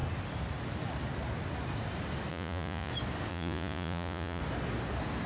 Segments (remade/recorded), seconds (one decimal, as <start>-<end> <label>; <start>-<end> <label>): 0.0-2.3 recorded; 2.3-2.9 remade; 2.9-3.3 recorded; 3.3-4.4 remade; 4.4-5.3 recorded